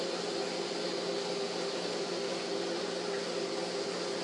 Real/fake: real